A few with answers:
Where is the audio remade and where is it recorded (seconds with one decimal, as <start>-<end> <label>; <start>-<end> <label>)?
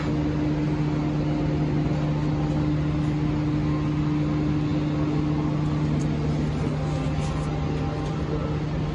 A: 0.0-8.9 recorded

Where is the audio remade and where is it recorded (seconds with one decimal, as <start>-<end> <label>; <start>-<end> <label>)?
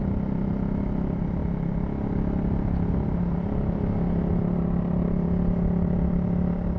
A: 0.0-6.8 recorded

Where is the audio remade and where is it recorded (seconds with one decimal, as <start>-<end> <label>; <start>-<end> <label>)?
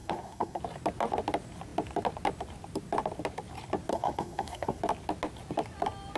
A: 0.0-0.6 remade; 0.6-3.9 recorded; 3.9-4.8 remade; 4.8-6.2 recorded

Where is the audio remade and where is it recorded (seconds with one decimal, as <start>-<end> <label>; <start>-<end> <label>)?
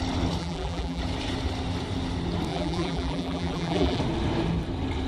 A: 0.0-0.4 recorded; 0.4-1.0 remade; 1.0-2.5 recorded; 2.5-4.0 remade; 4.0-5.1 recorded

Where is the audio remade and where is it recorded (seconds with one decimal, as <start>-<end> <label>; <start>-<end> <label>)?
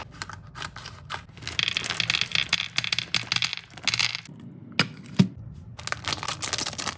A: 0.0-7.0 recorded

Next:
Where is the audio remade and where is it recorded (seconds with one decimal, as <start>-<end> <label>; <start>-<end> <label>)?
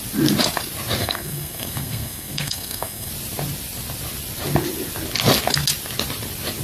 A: 0.0-1.0 recorded; 1.0-3.1 remade; 3.1-6.6 recorded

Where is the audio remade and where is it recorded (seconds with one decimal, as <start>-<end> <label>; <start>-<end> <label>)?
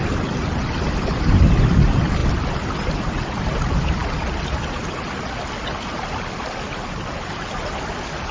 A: 0.0-8.3 recorded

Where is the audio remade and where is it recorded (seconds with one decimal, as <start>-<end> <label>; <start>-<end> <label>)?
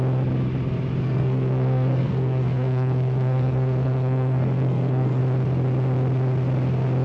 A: 0.0-1.0 recorded; 1.0-5.2 remade; 5.2-7.0 recorded